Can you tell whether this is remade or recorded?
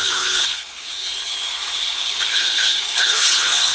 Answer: remade